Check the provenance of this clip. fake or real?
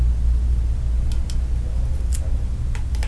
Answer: real